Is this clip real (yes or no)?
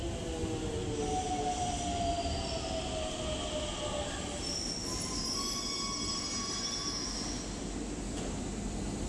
yes